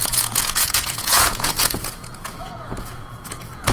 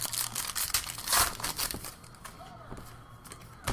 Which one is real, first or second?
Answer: second